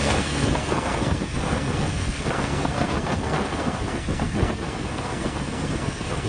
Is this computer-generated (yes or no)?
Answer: yes